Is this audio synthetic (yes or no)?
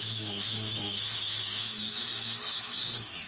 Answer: yes